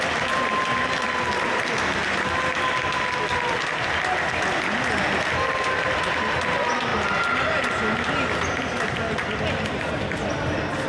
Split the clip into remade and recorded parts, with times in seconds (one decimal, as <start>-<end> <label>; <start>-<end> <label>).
0.0-10.9 recorded